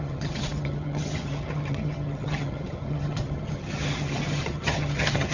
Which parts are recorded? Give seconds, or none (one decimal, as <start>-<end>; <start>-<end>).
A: none